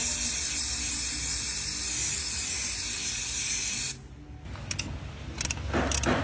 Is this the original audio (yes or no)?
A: yes